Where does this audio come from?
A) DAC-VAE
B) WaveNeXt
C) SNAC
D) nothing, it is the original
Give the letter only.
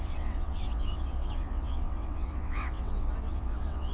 B